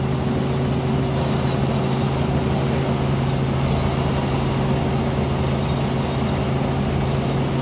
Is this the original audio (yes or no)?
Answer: yes